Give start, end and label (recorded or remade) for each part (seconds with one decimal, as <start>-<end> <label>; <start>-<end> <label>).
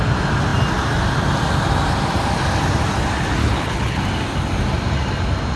0.0-3.4 recorded; 3.4-4.0 remade; 4.0-5.6 recorded